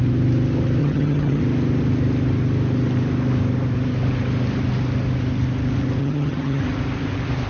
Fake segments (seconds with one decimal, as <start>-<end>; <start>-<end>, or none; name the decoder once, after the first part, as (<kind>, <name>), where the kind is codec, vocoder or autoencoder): 0.8-1.4 (vocoder, HiFi-GAN); 6.0-6.6